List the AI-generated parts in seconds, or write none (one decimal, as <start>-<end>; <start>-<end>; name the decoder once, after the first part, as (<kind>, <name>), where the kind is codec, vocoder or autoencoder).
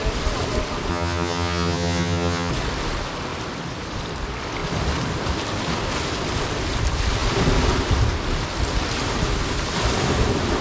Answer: 0.9-2.5 (vocoder, HiFi-GAN)